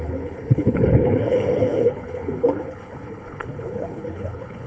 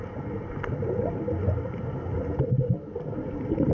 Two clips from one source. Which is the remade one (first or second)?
first